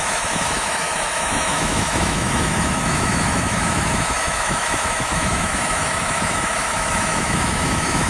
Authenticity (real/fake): fake